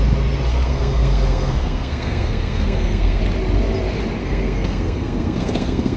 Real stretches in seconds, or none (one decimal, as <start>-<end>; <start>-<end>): 0.0-0.5; 3.2-4.2